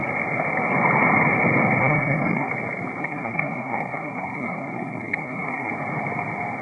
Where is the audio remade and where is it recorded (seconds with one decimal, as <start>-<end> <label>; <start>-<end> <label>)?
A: 0.0-1.8 recorded; 1.8-2.5 remade; 2.5-3.0 recorded; 3.0-5.7 remade; 5.7-6.6 recorded